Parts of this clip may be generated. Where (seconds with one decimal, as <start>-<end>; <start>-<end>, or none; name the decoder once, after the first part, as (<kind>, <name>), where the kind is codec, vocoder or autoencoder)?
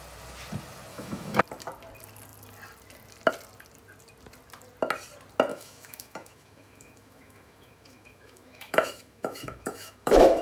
0.9-1.4 (autoencoder, DAC-VAE); 5.5-10.4